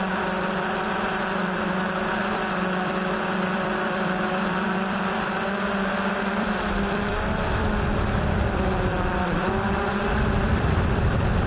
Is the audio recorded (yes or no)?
no